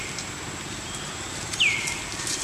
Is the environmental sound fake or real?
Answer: real